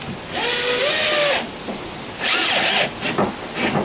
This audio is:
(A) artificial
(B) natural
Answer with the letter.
B